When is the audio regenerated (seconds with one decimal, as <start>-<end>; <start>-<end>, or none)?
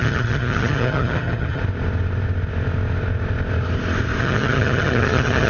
0.0-1.6; 4.2-5.5